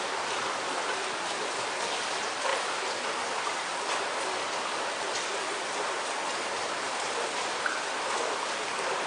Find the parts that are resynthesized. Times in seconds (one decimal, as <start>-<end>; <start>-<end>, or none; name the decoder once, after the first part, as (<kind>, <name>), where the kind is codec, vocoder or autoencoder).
0.0-9.1 (vocoder, BigVGAN v2)